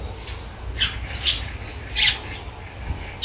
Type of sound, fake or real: real